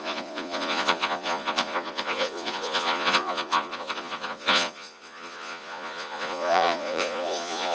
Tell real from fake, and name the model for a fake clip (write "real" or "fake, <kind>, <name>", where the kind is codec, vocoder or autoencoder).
fake, vocoder, Vocos